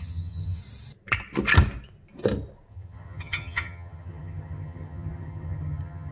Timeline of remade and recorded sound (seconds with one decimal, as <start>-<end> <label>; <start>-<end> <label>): 0.0-0.6 remade; 0.6-2.7 recorded; 2.7-6.1 remade